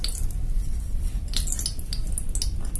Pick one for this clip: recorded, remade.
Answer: recorded